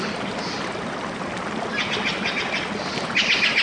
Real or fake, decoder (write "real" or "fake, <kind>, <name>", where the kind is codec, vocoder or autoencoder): real